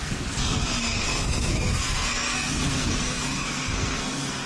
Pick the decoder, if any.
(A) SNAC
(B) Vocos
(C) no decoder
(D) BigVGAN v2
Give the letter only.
A